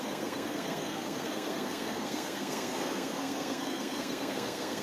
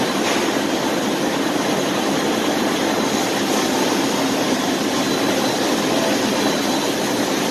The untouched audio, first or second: second